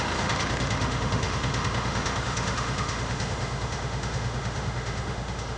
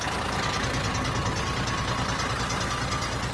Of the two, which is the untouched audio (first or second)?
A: second